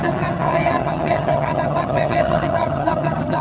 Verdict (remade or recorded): remade